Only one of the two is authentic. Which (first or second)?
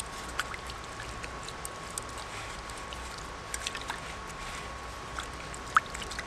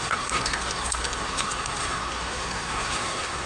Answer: first